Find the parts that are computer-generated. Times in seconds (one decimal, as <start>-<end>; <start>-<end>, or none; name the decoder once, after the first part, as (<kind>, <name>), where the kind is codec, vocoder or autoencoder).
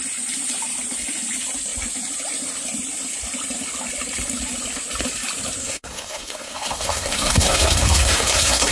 5.6-8.7 (codec, SNAC)